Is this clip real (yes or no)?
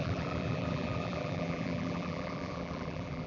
no